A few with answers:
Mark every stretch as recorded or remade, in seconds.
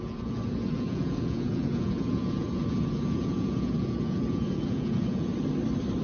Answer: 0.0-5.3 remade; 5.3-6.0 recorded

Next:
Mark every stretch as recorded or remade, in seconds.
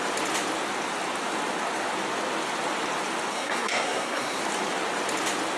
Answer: 0.0-3.3 recorded; 3.3-4.4 remade; 4.4-5.6 recorded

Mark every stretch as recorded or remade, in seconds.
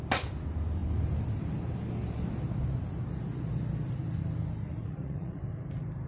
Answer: 0.0-4.7 recorded; 4.7-5.4 remade; 5.4-6.1 recorded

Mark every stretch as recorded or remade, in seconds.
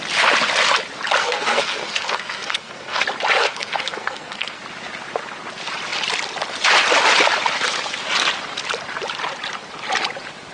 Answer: 0.0-1.2 recorded; 1.2-3.0 remade; 3.0-3.4 recorded; 3.4-4.6 remade; 4.6-10.5 recorded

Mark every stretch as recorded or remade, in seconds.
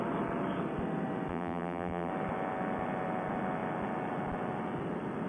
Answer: 0.0-1.3 recorded; 1.3-2.1 remade; 2.1-5.3 recorded